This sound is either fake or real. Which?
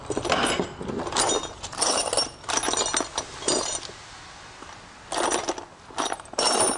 real